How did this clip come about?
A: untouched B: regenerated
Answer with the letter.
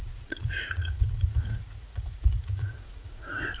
B